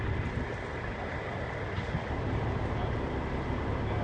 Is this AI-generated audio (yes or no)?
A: no